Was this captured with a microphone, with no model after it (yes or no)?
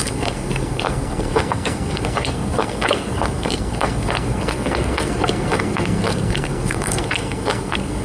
no